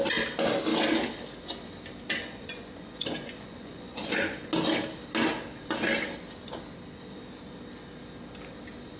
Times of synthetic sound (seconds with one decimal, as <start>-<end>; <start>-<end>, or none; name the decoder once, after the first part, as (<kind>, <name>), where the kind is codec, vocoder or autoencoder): 2.2-4.4 (vocoder, Vocos)